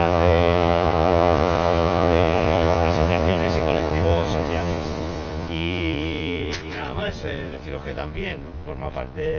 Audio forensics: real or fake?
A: fake